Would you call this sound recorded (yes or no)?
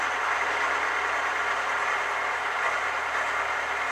yes